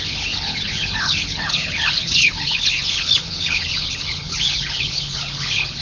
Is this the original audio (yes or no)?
no